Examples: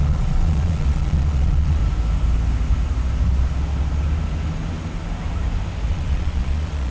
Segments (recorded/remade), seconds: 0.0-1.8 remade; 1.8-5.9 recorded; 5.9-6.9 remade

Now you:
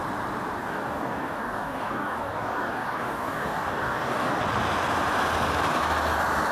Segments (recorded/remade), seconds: 0.0-0.6 recorded; 0.6-4.4 remade; 4.4-6.5 recorded

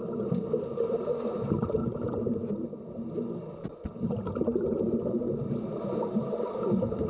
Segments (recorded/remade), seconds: 0.0-7.1 recorded

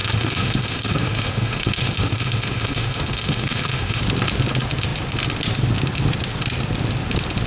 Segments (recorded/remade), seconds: 0.0-4.0 remade; 4.0-7.5 recorded

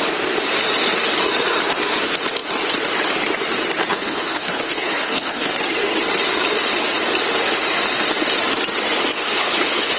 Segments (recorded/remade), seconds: 0.0-3.9 recorded; 3.9-5.5 remade; 5.5-9.1 recorded; 9.1-10.0 remade

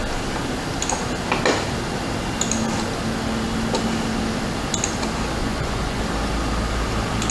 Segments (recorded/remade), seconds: 0.0-5.4 recorded; 5.4-6.0 remade; 6.0-7.3 recorded

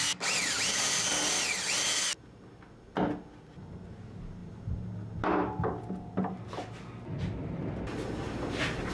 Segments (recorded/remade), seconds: 0.0-8.9 recorded

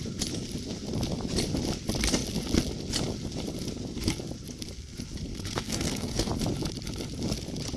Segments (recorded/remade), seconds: 0.0-5.3 recorded; 5.3-6.3 remade; 6.3-7.8 recorded